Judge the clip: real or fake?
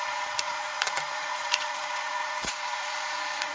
fake